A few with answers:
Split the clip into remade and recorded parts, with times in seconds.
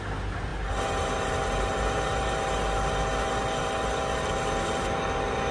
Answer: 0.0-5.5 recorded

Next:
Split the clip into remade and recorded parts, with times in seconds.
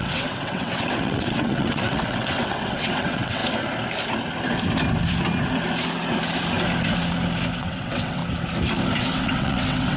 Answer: 0.0-3.4 remade; 3.4-7.6 recorded; 7.6-8.2 remade; 8.2-9.0 recorded; 9.0-10.0 remade